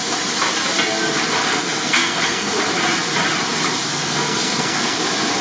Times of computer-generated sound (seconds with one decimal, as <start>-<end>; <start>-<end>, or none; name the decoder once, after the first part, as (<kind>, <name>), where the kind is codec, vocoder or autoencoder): 1.4-2.5 (codec, SNAC); 3.9-5.0